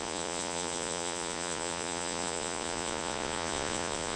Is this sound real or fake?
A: fake